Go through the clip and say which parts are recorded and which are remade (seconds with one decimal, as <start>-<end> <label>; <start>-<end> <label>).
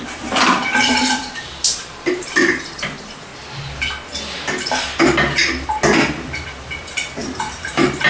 0.0-3.3 remade; 3.3-7.2 recorded; 7.2-8.1 remade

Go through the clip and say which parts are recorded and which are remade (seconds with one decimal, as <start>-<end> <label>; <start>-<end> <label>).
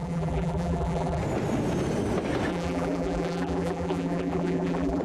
0.0-1.2 remade; 1.2-2.5 recorded; 2.5-5.0 remade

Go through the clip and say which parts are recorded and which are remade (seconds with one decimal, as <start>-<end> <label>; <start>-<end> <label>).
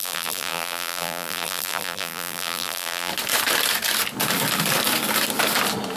0.0-3.1 remade; 3.1-6.0 recorded